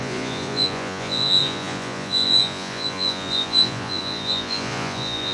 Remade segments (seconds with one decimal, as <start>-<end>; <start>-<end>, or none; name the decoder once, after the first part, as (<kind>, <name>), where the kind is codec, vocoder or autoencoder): 0.0-5.3 (vocoder, Vocos)